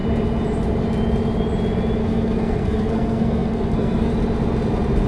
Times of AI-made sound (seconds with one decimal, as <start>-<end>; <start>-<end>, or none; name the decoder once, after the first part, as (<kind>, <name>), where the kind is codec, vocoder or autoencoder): 2.0-4.1 (codec, SNAC)